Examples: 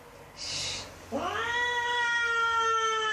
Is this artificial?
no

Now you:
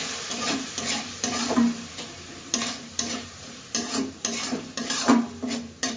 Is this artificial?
yes